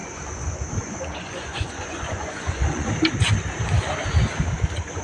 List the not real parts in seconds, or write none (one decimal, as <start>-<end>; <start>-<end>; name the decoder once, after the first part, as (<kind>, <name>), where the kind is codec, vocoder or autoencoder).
0.0-2.9 (vocoder, Vocos)